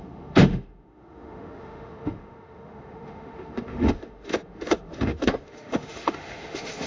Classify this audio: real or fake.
fake